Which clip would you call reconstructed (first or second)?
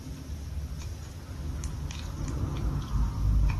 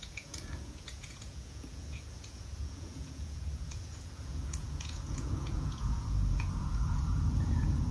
second